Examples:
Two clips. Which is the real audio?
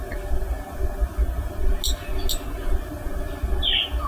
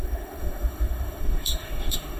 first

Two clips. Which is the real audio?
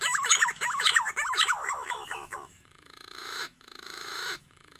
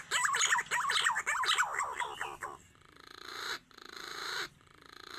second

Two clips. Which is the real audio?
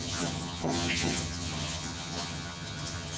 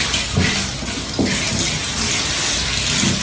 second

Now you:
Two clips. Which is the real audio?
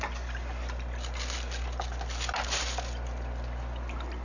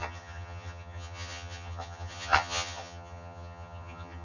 first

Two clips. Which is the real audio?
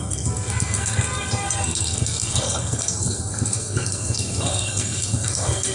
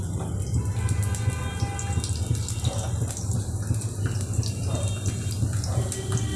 second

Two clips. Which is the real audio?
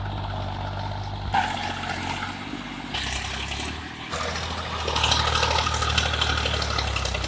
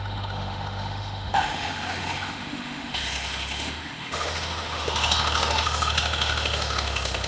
first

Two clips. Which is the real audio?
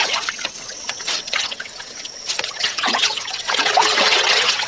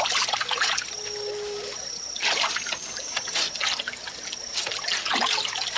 second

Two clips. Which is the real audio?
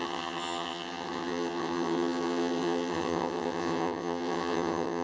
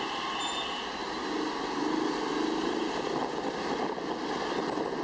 second